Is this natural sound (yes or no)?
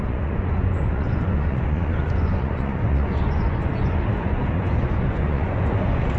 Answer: no